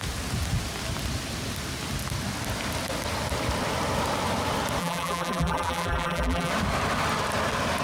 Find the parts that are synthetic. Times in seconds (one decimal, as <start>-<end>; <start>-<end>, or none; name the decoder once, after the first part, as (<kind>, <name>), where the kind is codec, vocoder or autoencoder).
4.8-6.5 (vocoder, BigVGAN v2)